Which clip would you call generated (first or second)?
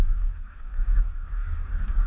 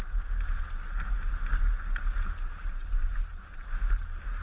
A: first